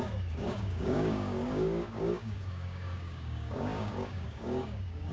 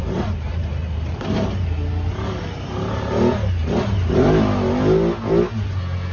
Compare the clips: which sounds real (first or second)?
second